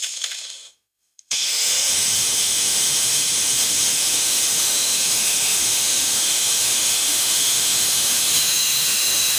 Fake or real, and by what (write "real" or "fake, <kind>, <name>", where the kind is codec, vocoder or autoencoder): fake, autoencoder, DAC-VAE